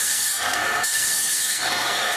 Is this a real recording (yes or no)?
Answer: no